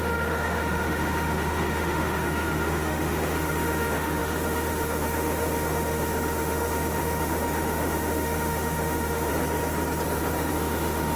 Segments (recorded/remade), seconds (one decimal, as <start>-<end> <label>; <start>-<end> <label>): 0.0-9.3 remade; 9.3-10.5 recorded; 10.5-11.2 remade